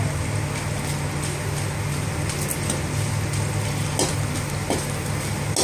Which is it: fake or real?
real